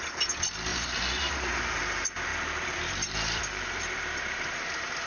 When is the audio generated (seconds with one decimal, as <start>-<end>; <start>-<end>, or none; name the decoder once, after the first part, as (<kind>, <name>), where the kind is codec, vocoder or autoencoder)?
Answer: 0.7-1.8 (vocoder, BigVGAN v2); 2.3-5.1